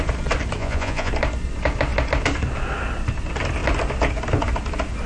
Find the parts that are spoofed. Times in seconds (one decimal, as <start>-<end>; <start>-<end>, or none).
0.6-1.1